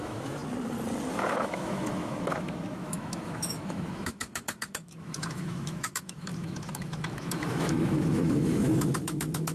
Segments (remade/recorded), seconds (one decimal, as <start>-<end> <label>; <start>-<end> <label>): 0.0-0.4 remade; 0.4-1.1 recorded; 1.1-9.5 remade